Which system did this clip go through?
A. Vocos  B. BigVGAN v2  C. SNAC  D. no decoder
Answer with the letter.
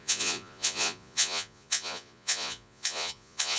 A